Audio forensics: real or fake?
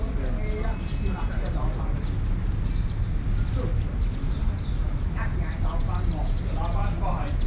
real